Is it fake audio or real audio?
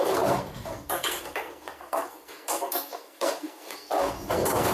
fake